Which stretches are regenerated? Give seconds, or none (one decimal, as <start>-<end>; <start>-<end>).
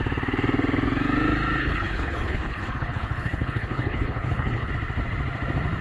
1.6-4.7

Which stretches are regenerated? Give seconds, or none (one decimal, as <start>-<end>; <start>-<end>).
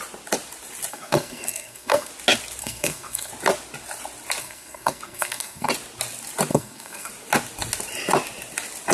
0.9-2.1; 2.6-3.3; 4.4-5.7; 6.5-7.1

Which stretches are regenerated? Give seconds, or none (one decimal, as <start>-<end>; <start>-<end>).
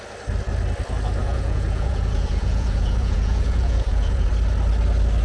1.2-4.3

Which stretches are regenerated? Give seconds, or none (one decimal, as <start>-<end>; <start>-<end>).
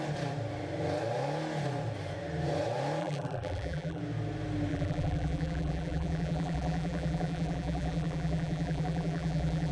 3.0-4.0; 4.7-9.7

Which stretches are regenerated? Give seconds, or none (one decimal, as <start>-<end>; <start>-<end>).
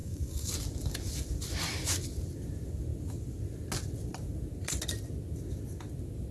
0.0-0.5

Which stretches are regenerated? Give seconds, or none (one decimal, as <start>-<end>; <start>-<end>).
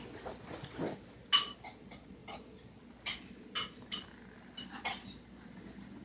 none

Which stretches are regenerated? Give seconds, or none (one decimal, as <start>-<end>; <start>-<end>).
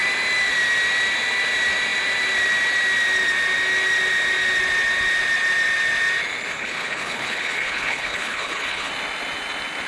6.5-8.9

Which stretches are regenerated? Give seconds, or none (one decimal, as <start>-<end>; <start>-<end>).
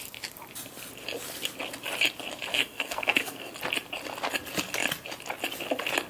2.5-3.5